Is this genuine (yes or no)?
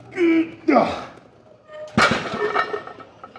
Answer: yes